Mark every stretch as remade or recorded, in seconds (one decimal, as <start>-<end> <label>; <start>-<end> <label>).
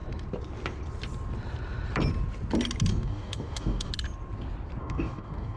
0.0-2.9 recorded; 2.9-3.9 remade; 3.9-4.8 recorded; 4.8-5.6 remade